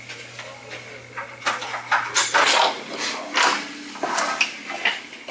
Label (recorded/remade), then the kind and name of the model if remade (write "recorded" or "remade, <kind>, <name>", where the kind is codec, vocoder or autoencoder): recorded